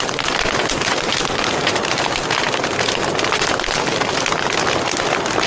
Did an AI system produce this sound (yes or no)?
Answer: no